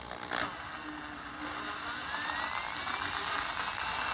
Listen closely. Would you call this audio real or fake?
real